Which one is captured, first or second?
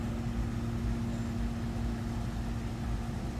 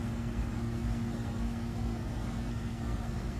first